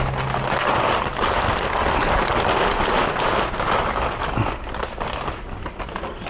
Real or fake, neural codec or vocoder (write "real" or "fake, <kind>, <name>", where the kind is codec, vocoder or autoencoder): real